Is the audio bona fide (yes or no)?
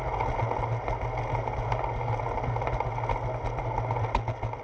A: yes